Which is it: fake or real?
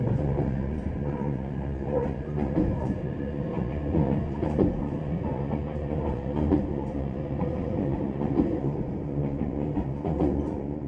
fake